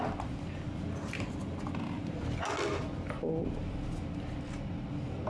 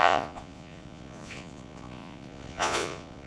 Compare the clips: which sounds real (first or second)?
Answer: first